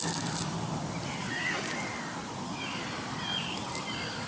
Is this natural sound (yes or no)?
yes